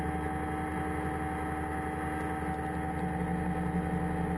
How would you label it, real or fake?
real